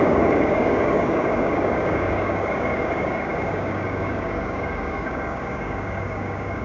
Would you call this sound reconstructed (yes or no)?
yes